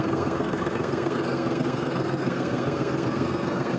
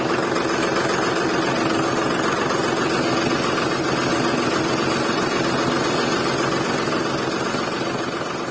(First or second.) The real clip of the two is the second